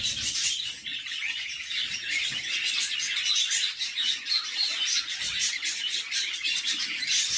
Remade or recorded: recorded